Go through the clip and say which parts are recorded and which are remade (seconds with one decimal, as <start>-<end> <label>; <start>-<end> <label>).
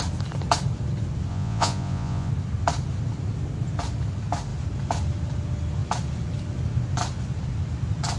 0.0-1.3 recorded; 1.3-2.3 remade; 2.3-8.2 recorded